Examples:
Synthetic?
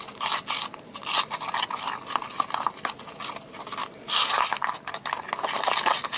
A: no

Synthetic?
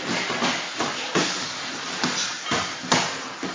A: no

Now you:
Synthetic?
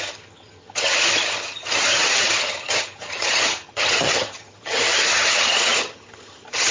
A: yes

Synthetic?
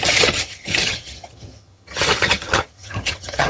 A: yes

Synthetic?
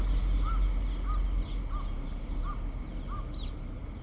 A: no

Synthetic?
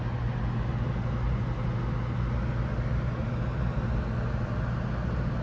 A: no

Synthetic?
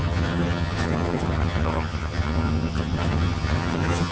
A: yes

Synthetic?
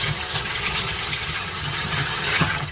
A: yes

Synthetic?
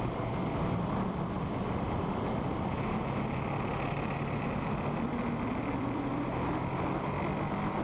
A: no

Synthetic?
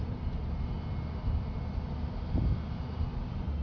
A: no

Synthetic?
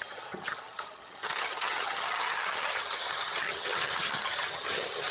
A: yes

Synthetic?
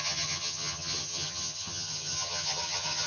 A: yes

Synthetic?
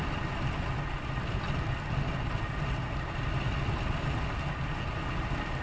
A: no